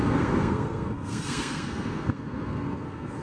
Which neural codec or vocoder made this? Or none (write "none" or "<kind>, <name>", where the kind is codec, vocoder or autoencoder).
codec, SNAC